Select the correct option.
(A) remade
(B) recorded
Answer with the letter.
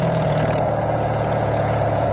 A